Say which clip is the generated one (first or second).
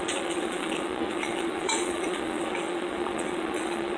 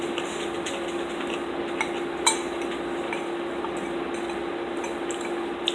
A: first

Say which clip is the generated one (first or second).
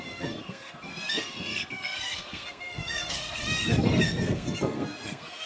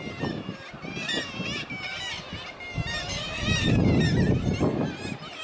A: first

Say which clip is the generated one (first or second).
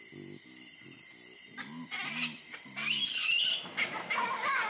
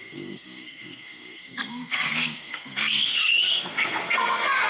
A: second